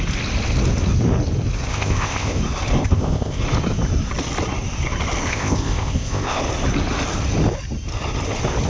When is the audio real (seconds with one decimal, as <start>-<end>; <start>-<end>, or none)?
0.0-1.7; 2.4-2.8; 3.4-5.3; 6.4-8.7